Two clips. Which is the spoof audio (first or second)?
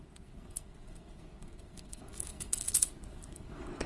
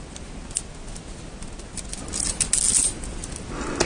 first